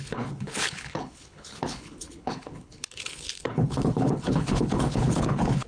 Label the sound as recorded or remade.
remade